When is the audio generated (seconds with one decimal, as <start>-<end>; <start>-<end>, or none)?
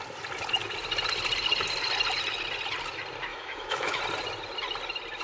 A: 3.3-4.0